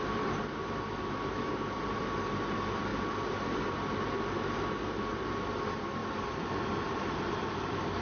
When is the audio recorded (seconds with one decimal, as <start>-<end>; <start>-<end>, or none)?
0.0-0.6; 1.5-8.0